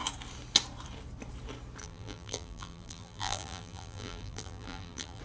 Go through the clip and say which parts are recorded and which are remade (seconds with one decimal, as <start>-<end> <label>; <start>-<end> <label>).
0.0-1.8 recorded; 1.8-5.2 remade